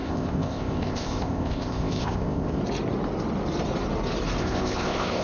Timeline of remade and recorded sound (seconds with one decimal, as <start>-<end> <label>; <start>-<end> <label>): 0.0-2.6 remade; 2.6-4.4 recorded; 4.4-5.2 remade